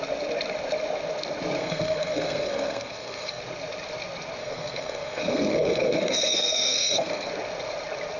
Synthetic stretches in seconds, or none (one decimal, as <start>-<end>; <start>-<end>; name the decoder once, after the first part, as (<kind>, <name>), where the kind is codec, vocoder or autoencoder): 1.6-3.4 (codec, SNAC); 4.4-7.3